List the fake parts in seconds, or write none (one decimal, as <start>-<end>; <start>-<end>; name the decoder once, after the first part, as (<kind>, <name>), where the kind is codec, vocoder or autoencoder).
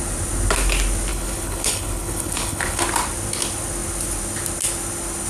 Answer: 1.1-2.8 (codec, HILCodec)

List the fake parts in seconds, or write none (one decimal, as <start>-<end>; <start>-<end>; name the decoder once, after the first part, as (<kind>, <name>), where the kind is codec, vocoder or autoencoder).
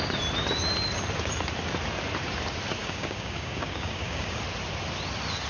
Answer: 2.8-4.4 (codec, DAC)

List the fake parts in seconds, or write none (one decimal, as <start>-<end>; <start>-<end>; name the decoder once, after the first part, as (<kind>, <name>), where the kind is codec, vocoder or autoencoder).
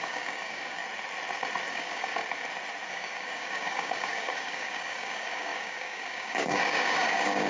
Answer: 0.0-0.8 (codec, DAC); 1.7-2.2; 2.9-7.5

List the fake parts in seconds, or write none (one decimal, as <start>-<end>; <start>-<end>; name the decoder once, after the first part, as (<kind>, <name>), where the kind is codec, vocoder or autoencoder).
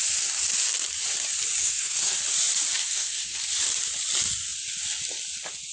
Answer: 1.6-2.2 (codec, SNAC); 2.8-3.4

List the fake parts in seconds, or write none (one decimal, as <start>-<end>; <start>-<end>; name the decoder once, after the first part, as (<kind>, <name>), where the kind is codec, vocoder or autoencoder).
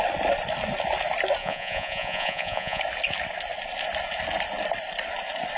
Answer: 1.4-2.8 (vocoder, Vocos)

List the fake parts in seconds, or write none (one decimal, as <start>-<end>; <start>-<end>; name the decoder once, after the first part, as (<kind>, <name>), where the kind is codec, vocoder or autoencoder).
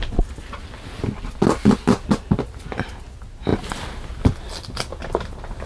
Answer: none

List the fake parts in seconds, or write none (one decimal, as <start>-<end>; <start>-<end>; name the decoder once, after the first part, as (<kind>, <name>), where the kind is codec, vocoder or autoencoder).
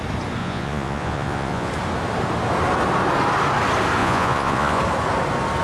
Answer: 0.4-1.7 (vocoder, Vocos); 4.0-4.8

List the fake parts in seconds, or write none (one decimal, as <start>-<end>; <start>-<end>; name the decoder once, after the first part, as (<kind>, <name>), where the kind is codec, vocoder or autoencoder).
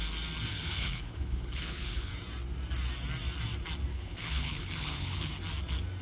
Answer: 0.5-2.1 (codec, HILCodec); 3.9-5.3